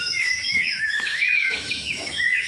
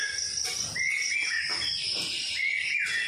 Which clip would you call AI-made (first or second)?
first